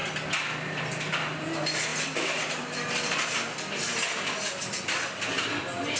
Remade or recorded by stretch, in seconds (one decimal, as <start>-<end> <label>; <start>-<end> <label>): 0.0-6.0 recorded